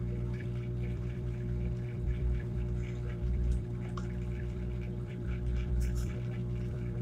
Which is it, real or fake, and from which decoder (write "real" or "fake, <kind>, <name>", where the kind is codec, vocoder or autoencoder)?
fake, vocoder, BigVGAN v2